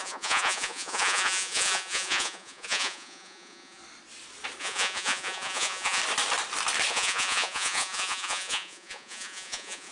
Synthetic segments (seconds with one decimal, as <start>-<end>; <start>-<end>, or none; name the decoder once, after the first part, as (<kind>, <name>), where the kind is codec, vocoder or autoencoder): 0.0-3.8 (vocoder, Vocos); 4.6-6.0; 6.9-9.9